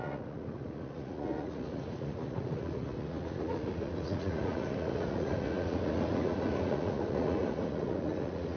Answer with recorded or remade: remade